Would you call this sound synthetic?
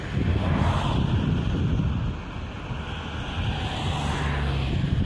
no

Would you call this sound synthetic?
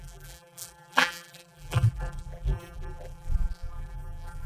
yes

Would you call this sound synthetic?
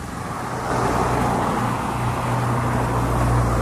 no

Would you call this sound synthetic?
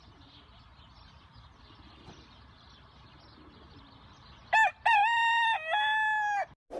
no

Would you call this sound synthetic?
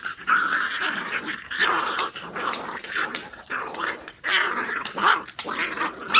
yes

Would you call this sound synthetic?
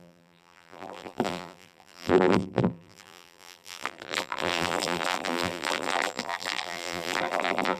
yes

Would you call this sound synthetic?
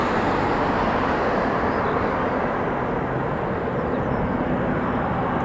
no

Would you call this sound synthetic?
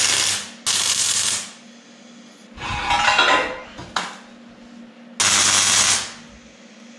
no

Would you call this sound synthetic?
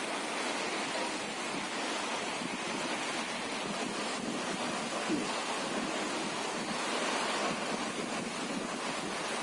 no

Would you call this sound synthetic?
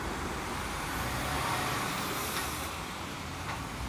yes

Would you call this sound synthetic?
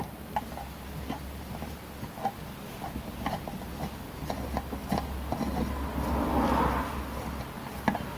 no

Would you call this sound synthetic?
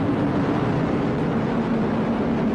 no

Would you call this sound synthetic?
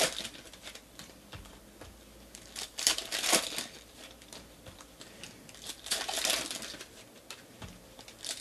yes